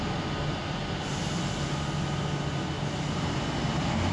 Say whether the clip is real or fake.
real